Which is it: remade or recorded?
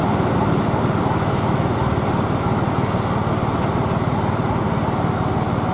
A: recorded